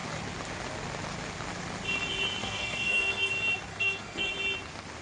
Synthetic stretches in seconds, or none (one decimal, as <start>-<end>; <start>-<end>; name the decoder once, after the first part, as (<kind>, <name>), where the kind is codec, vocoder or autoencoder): 2.4-3.3 (codec, SNAC); 3.7-4.3